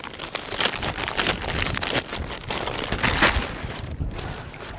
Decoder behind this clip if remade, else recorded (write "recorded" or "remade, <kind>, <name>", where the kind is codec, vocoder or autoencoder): recorded